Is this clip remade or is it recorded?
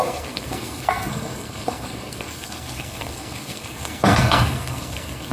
remade